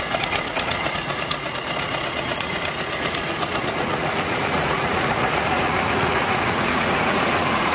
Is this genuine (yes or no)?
no